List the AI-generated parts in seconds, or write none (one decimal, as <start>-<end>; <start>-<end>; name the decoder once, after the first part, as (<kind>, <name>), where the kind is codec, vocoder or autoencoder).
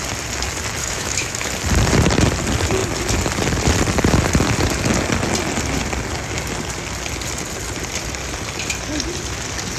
0.8-1.5 (autoencoder, DAC-VAE)